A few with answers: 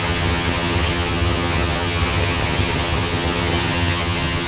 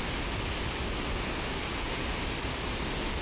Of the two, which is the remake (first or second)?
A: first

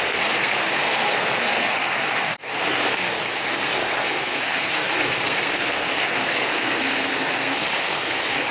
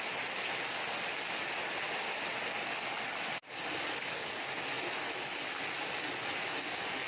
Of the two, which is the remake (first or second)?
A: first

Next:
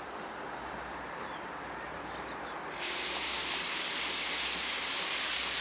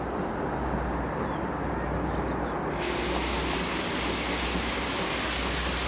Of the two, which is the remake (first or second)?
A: first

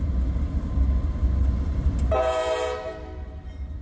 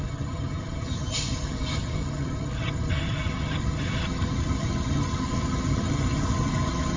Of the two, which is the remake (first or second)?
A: second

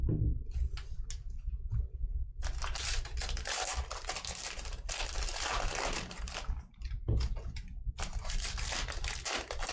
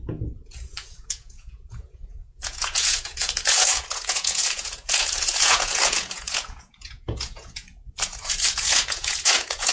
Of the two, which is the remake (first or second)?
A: second